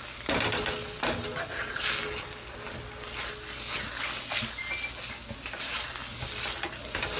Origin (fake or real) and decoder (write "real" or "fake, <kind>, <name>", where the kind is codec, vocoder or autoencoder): real